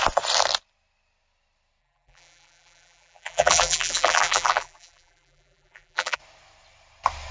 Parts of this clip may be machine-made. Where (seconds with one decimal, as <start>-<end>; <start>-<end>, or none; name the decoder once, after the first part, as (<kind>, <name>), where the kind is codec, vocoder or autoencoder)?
1.8-6.2 (vocoder, BigVGAN v2)